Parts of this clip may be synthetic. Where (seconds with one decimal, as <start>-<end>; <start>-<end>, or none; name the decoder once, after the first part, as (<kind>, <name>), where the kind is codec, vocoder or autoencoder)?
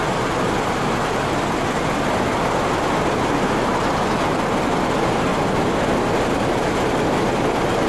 none